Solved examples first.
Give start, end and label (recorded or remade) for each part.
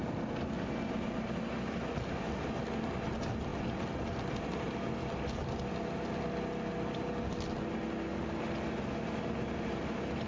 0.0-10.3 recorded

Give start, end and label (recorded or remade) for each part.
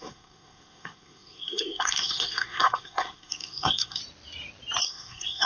0.0-4.0 remade; 4.0-4.8 recorded; 4.8-5.5 remade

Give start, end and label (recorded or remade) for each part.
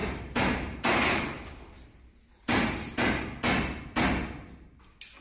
0.0-3.1 remade; 3.1-5.2 recorded